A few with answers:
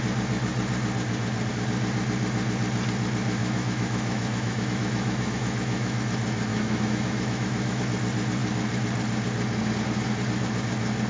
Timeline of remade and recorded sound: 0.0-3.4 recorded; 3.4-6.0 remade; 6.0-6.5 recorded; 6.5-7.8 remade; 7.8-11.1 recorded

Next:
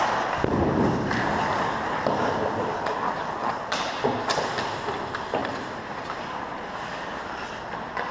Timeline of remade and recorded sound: 0.0-3.4 recorded; 3.4-3.9 remade; 3.9-5.4 recorded; 5.4-5.9 remade; 5.9-8.1 recorded